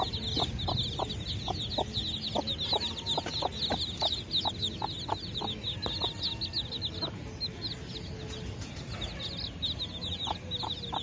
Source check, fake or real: real